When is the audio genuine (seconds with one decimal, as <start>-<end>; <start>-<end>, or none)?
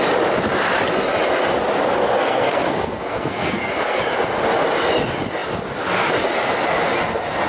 0.0-2.0; 4.0-7.5